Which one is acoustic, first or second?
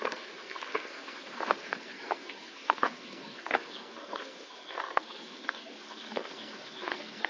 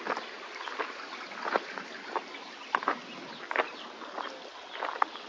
second